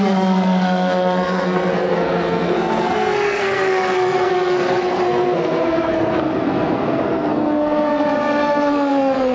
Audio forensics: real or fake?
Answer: fake